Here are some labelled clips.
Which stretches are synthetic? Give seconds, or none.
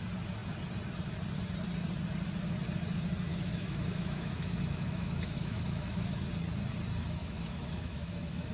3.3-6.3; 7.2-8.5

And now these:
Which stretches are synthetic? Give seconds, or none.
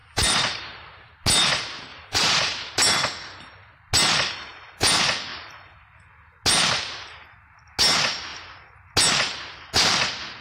0.0-1.1; 1.9-2.6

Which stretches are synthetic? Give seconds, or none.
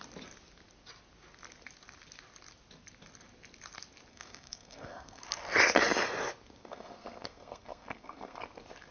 4.1-5.2; 6.6-8.4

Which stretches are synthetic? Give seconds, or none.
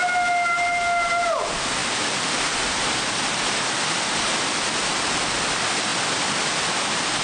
none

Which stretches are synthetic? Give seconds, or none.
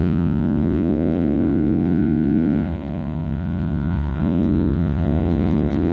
0.0-5.9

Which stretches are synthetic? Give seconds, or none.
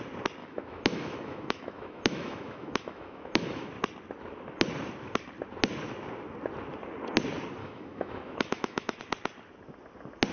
0.4-3.7; 7.6-9.0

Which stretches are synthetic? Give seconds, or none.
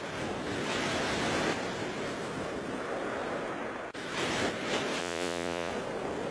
5.0-5.7